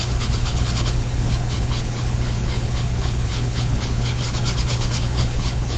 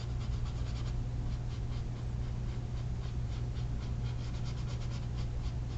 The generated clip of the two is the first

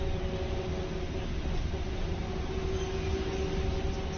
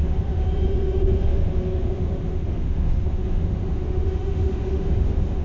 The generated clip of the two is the second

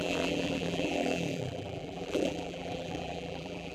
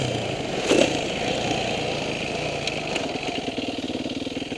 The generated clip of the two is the first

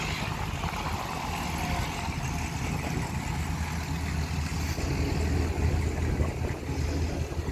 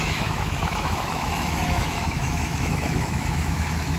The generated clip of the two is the second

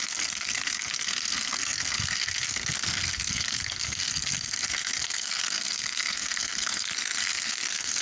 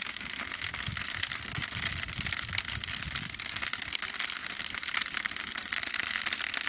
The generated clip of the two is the first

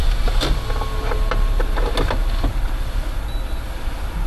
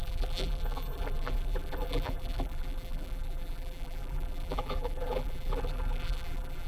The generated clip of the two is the second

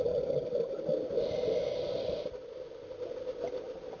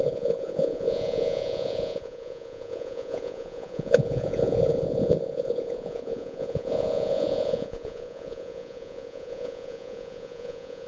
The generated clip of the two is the second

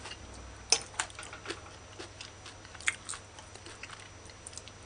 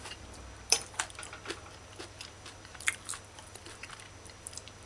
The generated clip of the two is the second